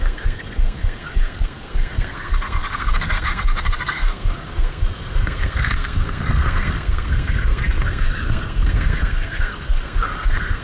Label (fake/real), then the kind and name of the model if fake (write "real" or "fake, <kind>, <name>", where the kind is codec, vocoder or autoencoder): fake, codec, SNAC